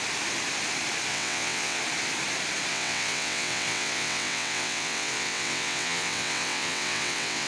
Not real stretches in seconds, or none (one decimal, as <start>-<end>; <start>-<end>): 1.1-1.8; 2.7-7.5